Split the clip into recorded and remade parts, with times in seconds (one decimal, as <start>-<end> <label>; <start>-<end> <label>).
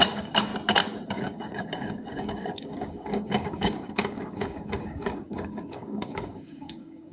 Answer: 0.0-0.5 remade; 0.5-1.1 recorded; 1.1-7.1 remade